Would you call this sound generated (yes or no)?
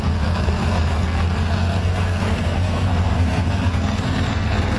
yes